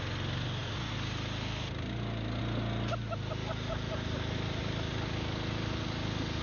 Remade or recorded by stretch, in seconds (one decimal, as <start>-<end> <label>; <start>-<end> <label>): 0.0-6.4 recorded

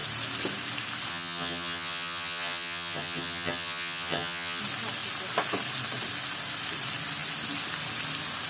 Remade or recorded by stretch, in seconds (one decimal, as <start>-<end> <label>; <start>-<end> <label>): 0.0-1.1 recorded; 1.1-4.6 remade; 4.6-8.5 recorded

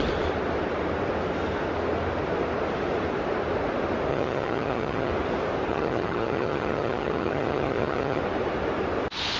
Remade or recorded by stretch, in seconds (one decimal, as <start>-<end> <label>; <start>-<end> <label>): 0.0-4.1 recorded; 4.1-5.1 remade; 5.1-5.7 recorded; 5.7-8.2 remade; 8.2-9.4 recorded

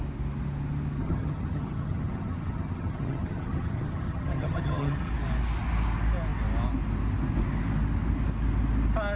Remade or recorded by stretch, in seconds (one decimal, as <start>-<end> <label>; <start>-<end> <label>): 0.0-1.0 recorded; 1.0-5.1 remade; 5.1-9.2 recorded

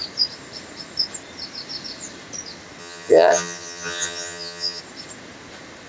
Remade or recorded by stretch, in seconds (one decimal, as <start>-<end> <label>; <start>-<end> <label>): 0.0-2.8 recorded; 2.8-4.8 remade; 4.8-5.9 recorded